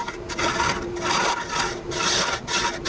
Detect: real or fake real